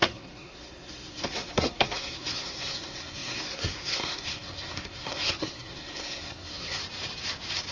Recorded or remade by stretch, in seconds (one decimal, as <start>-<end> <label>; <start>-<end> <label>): 0.0-6.8 remade; 6.8-7.7 recorded